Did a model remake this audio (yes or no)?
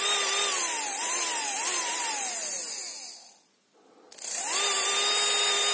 no